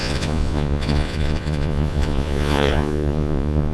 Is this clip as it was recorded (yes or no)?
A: no